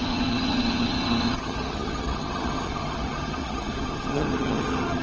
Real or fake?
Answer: fake